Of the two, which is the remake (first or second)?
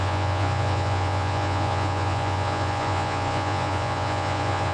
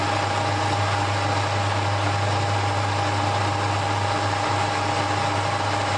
first